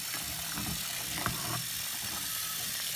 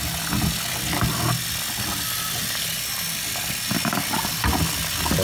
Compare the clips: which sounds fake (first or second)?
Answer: first